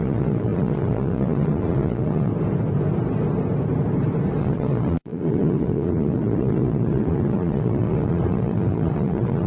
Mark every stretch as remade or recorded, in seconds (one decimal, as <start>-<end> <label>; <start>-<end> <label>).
0.0-2.3 remade; 2.3-4.4 recorded; 4.4-9.5 remade